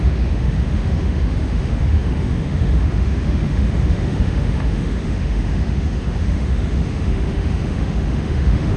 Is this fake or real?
fake